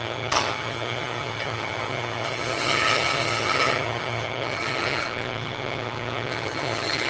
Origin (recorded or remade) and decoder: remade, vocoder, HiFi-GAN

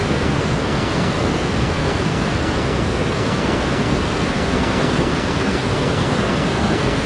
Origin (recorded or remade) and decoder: remade, codec, SNAC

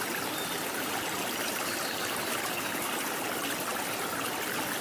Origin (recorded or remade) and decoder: recorded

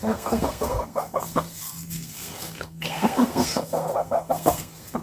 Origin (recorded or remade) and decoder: remade, codec, SNAC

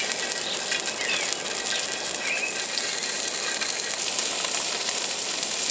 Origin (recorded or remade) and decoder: recorded